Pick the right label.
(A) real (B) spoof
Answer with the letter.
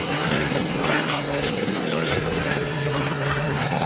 B